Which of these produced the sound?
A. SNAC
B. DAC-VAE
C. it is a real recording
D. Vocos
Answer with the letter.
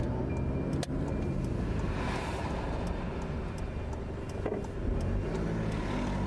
C